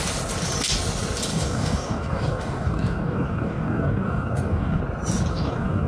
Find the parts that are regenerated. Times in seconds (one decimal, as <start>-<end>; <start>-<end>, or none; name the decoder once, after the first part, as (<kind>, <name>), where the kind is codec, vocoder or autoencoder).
1.3-4.8 (codec, DAC); 5.3-5.9